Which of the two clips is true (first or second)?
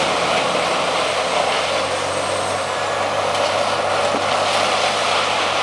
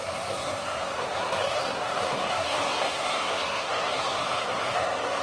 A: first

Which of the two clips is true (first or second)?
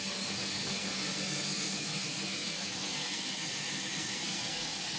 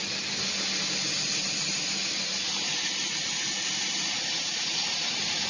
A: second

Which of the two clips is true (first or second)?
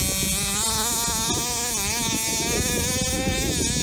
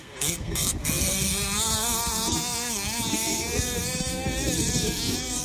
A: first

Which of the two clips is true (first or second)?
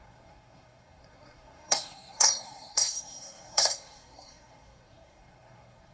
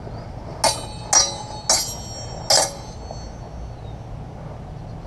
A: second